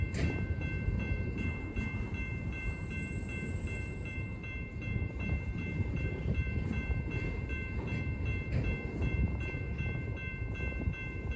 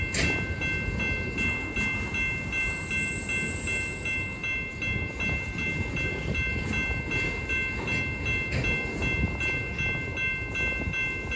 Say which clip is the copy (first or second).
first